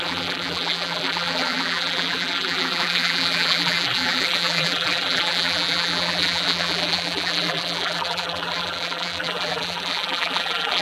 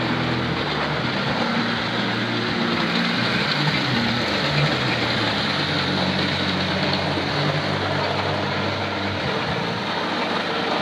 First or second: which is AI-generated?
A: first